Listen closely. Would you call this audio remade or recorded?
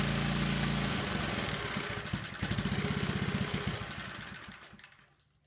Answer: recorded